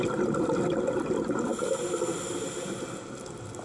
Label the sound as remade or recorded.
recorded